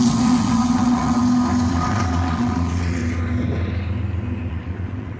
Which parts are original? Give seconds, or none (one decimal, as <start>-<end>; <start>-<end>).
1.2-1.7; 3.0-4.5